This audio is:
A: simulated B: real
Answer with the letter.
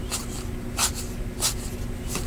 B